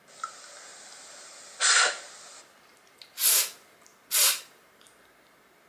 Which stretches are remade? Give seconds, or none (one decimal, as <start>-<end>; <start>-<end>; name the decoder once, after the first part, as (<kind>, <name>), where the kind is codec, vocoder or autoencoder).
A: none